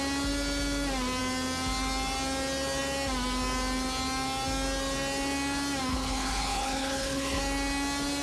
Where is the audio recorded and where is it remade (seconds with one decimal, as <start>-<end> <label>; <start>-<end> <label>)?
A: 0.0-5.9 recorded; 5.9-7.4 remade; 7.4-8.2 recorded

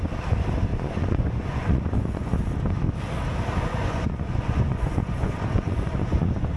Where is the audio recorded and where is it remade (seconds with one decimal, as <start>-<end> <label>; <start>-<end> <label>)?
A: 0.0-0.7 recorded; 0.7-2.4 remade; 2.4-3.8 recorded; 3.8-6.6 remade

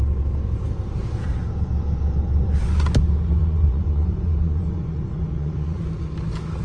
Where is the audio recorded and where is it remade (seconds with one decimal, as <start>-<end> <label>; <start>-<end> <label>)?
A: 0.0-3.4 recorded; 3.4-5.8 remade; 5.8-6.6 recorded